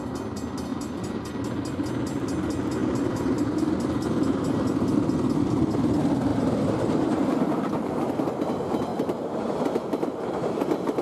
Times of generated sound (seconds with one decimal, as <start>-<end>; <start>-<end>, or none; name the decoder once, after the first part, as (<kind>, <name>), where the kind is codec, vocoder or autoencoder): 0.7-1.3 (vocoder, BigVGAN v2); 8.9-9.5